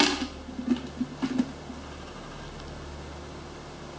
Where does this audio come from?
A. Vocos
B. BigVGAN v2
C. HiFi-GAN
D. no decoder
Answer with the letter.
D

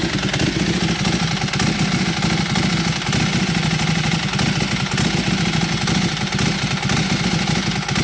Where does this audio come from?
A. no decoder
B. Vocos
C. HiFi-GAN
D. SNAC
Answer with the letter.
A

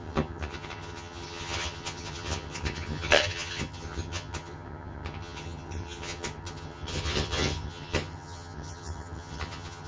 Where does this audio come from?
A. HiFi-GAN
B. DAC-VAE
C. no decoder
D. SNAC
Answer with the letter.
A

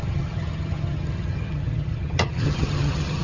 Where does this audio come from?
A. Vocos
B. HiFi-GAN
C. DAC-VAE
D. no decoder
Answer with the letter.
B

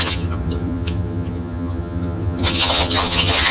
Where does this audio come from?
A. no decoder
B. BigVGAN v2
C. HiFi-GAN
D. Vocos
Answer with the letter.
C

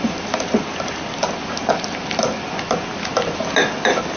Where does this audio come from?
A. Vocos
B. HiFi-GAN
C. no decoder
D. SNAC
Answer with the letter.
C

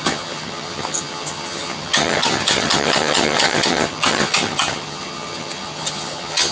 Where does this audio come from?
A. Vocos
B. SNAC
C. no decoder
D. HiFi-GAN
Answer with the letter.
D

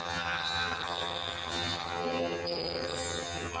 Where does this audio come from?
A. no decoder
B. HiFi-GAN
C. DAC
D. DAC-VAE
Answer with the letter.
B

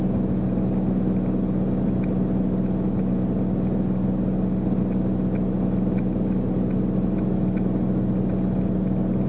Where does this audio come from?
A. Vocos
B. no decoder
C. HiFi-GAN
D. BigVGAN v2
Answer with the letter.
B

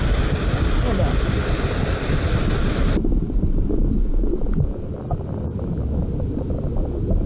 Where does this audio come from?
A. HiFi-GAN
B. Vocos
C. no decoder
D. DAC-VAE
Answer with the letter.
C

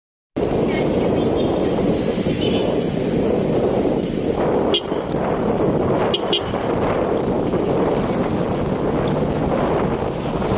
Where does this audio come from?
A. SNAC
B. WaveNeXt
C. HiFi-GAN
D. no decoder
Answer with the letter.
D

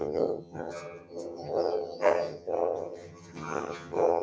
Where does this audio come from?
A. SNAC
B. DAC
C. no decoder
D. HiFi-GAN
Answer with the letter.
D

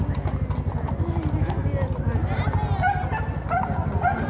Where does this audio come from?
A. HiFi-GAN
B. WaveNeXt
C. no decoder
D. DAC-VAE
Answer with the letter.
C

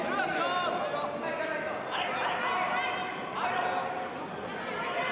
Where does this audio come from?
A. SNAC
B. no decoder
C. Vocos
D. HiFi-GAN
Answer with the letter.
B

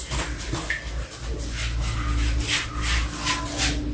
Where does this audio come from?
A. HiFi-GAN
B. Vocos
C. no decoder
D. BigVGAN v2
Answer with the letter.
C